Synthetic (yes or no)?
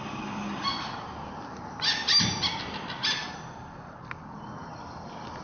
no